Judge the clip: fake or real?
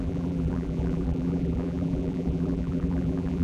fake